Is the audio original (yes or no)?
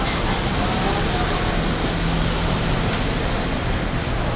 yes